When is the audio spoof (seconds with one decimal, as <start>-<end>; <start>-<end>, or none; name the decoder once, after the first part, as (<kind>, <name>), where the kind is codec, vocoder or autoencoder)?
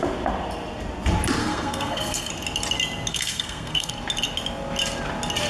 1.4-2.3 (codec, SNAC); 3.1-3.9